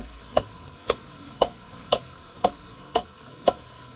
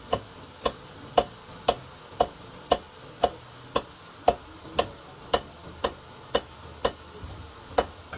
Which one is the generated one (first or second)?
first